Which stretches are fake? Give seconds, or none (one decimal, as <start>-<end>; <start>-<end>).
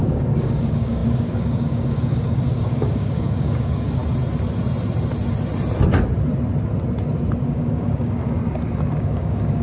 0.0-4.0; 7.5-8.4; 9.0-9.6